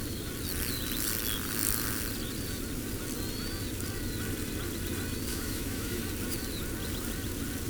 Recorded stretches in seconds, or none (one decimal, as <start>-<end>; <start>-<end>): 0.0-5.3; 6.0-7.7